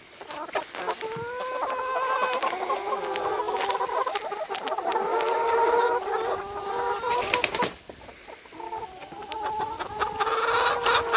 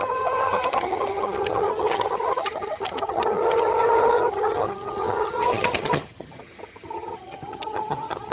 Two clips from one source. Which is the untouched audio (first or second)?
first